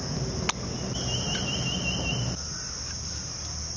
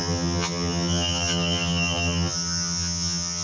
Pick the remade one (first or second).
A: second